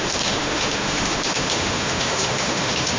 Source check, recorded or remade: remade